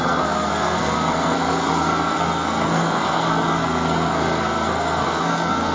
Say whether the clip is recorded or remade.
remade